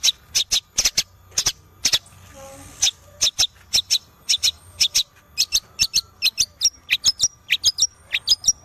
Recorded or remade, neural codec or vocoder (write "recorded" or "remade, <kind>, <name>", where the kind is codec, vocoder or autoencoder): recorded